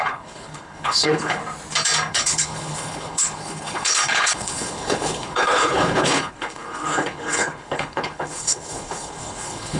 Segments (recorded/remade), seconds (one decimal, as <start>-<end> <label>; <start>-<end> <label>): 0.0-1.4 remade; 1.4-2.1 recorded; 2.1-9.8 remade